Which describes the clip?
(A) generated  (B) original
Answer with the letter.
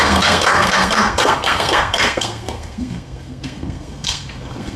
A